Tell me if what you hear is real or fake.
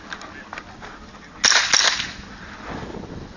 real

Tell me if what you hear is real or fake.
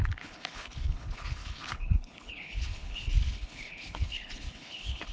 fake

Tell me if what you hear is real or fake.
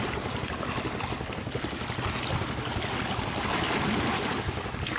real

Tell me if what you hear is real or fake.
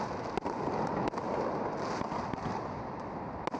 real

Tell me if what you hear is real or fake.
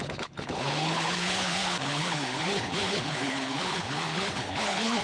fake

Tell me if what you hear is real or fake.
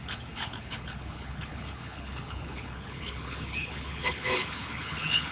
fake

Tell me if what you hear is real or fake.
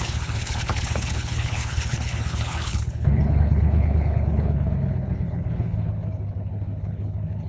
fake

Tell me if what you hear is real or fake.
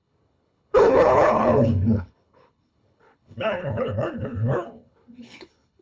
fake